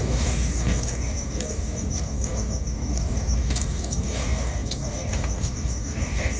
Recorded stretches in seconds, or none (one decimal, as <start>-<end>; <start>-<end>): none